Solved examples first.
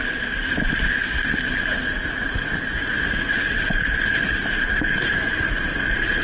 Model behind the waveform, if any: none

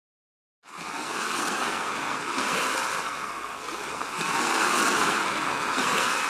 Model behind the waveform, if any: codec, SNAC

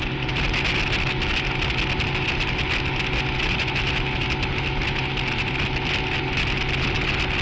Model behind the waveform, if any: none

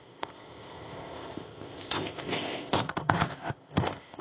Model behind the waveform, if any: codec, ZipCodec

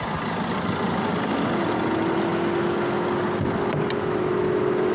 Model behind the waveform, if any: none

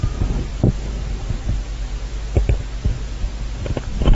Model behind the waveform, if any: none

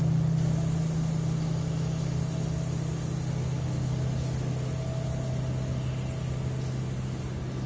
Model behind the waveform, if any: none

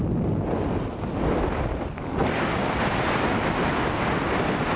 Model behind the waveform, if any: none